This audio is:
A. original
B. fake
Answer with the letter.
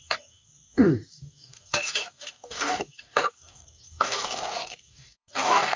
B